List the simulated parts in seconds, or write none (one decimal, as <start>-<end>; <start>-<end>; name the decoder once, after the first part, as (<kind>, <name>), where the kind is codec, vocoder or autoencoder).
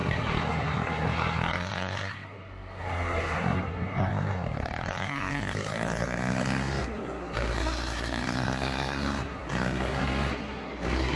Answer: 0.0-11.2 (codec, SNAC)